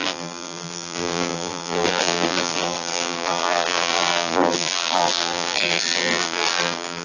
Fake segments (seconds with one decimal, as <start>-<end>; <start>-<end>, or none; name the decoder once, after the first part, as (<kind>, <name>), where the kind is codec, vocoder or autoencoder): 0.0-7.0 (vocoder, BigVGAN v2)